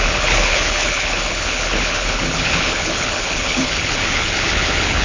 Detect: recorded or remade remade